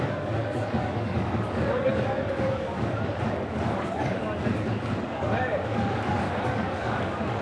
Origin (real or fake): fake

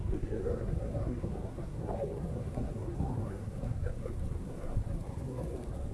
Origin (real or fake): fake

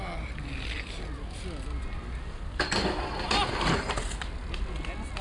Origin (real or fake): real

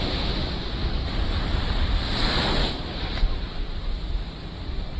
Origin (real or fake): fake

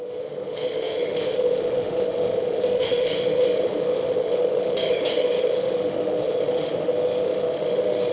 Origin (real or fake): fake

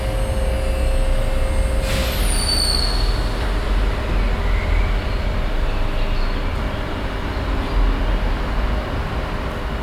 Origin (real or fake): real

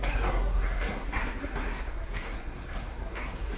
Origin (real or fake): fake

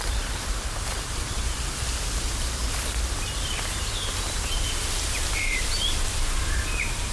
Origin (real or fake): fake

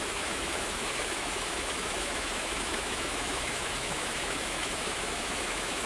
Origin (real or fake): fake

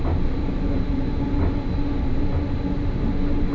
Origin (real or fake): real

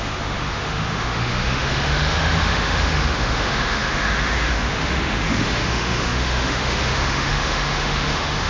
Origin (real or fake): fake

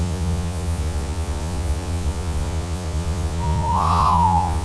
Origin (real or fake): fake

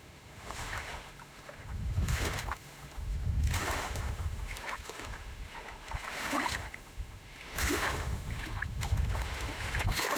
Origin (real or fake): fake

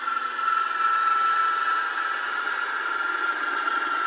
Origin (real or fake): real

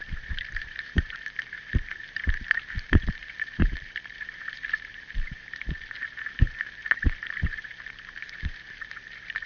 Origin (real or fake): fake